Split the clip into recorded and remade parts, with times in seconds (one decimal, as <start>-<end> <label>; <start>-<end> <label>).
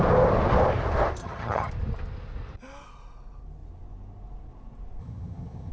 0.0-1.2 recorded; 1.2-1.7 remade; 1.7-5.0 recorded; 5.0-5.7 remade